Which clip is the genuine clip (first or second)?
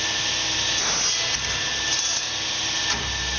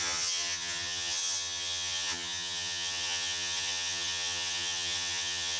first